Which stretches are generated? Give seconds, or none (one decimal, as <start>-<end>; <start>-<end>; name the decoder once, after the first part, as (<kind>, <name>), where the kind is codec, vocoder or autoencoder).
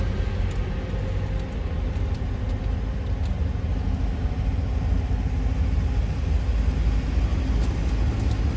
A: none